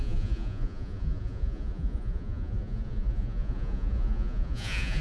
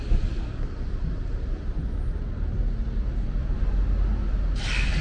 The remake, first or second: first